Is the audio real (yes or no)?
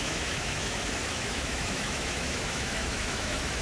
no